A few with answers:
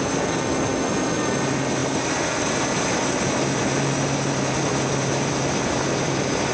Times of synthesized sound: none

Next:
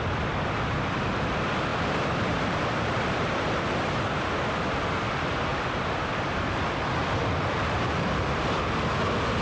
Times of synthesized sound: 1.7-5.1 (vocoder, BigVGAN v2); 5.5-8.2

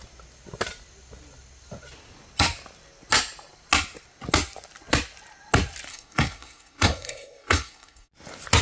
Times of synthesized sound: 5.9-8.1 (codec, SNAC)

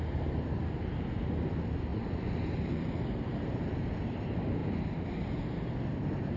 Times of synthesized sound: 1.9-4.0 (vocoder, BigVGAN v2)